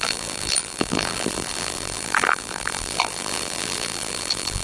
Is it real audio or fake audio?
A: fake